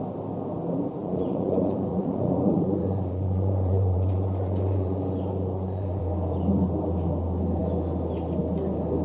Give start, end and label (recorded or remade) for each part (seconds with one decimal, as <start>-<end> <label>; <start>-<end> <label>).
0.0-1.0 recorded; 1.0-6.0 remade; 6.0-9.0 recorded